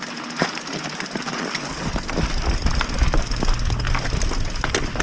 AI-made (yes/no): no